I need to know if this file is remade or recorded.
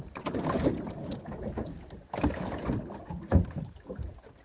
remade